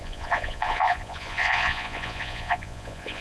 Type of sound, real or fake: fake